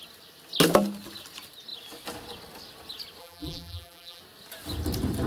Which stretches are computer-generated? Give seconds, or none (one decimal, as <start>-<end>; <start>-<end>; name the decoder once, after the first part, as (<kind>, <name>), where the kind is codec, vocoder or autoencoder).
3.2-4.2 (vocoder, BigVGAN v2)